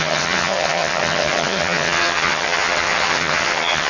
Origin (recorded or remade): remade